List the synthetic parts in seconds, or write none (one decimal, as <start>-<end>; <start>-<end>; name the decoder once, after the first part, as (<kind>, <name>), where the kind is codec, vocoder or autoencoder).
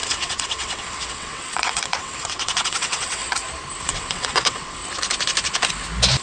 0.0-3.2 (vocoder, WaveNeXt); 3.8-4.8